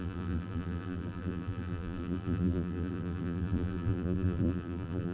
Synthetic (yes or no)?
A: yes